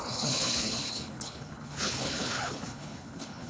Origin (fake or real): fake